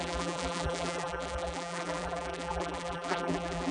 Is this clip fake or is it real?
fake